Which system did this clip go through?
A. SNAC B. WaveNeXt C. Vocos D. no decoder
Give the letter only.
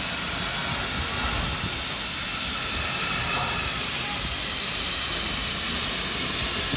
D